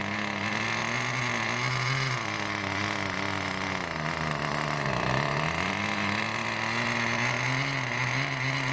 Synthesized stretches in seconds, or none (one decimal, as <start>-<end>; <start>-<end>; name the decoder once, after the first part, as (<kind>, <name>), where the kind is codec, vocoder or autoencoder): none